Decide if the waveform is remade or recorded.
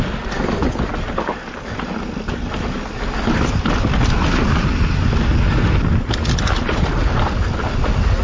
recorded